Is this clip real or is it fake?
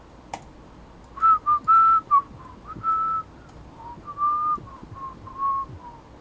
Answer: real